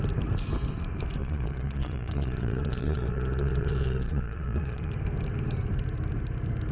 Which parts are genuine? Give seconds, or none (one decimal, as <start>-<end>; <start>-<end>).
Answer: 0.0-1.2; 4.9-6.7